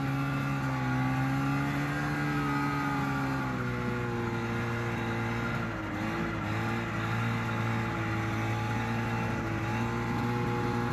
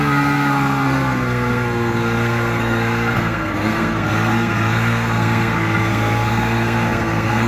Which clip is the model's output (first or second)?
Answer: second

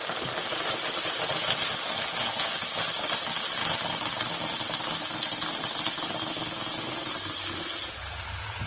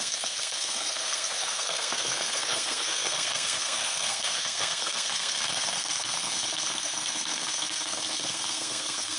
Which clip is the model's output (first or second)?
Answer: second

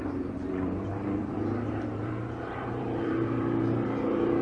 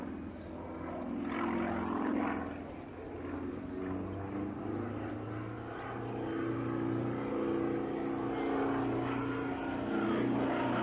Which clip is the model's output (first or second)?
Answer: first